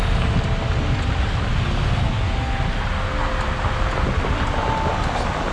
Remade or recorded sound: recorded